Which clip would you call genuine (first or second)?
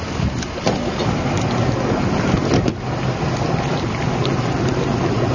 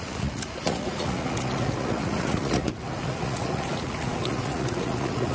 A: first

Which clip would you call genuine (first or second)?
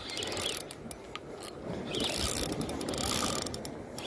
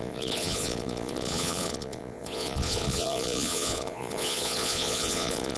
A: first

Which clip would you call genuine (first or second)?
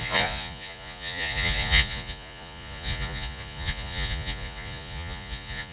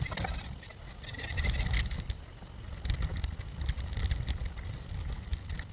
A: second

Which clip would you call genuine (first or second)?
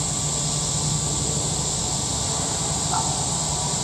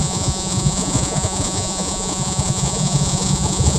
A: first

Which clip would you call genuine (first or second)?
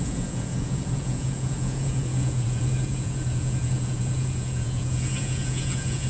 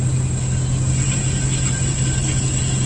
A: second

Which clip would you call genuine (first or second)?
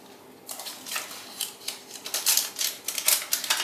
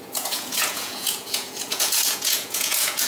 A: first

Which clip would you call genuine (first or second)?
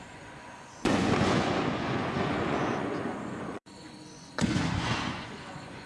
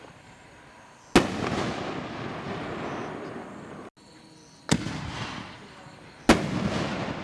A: second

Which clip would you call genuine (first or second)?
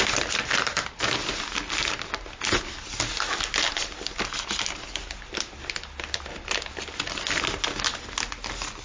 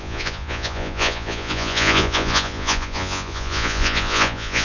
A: first